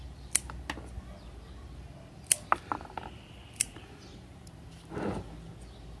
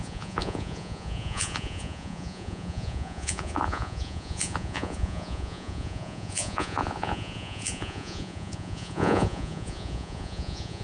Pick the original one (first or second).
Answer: first